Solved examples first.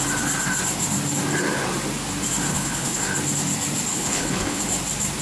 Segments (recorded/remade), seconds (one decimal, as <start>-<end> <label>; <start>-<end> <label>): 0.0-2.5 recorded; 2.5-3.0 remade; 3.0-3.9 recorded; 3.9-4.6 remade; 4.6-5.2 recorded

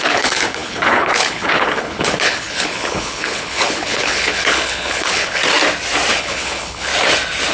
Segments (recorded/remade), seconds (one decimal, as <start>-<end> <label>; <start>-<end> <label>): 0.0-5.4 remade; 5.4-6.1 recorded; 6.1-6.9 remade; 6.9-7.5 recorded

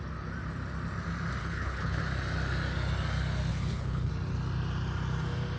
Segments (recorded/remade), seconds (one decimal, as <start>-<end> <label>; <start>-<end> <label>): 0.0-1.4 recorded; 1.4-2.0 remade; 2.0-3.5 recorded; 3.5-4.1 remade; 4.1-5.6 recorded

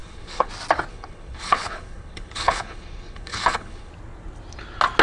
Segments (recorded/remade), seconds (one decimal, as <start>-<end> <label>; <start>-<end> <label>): 0.0-0.5 remade; 0.5-0.9 recorded; 0.9-3.9 remade; 3.9-5.0 recorded

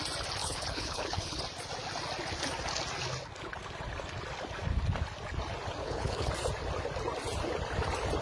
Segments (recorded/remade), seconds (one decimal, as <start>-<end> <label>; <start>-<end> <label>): 0.0-0.4 recorded; 0.4-1.4 remade; 1.4-5.8 recorded; 5.8-6.3 remade; 6.3-8.2 recorded